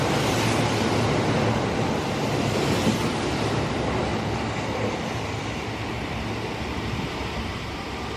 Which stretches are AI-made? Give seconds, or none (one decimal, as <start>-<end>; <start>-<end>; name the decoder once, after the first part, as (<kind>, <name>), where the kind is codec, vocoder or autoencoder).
none